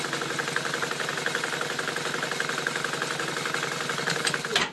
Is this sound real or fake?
real